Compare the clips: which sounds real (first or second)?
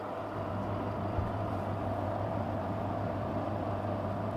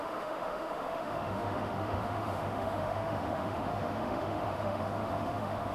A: first